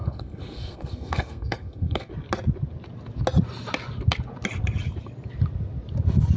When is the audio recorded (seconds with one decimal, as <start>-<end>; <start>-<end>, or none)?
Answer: 2.1-6.4